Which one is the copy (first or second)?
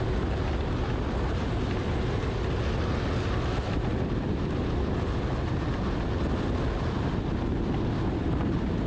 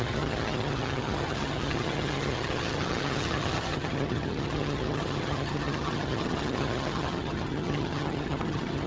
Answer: second